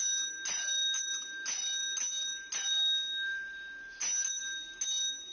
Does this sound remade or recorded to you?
recorded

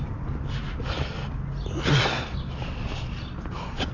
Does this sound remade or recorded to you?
recorded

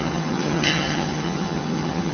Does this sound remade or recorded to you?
remade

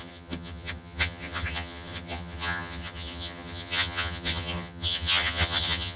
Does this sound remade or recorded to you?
remade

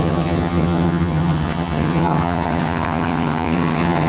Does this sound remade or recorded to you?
remade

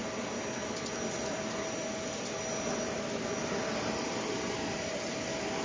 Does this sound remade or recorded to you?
recorded